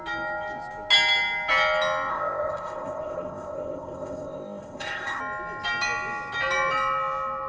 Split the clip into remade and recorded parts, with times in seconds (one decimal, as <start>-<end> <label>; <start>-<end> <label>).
0.0-2.1 recorded; 2.1-5.2 remade; 5.2-7.5 recorded